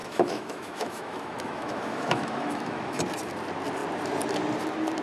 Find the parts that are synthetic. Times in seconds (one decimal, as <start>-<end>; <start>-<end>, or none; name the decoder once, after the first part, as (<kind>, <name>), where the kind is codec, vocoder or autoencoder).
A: 0.0-3.0 (autoencoder, DAC-VAE)